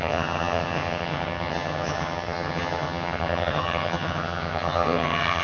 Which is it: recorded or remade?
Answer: remade